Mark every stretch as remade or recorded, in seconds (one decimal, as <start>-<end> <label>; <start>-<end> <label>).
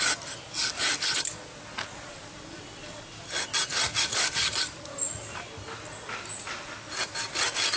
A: 0.0-7.8 recorded